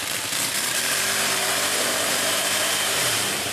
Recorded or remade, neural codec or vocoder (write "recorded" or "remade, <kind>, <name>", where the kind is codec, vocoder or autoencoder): remade, vocoder, BigVGAN v2